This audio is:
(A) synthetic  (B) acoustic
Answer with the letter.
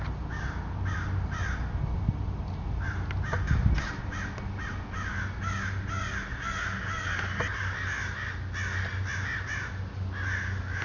B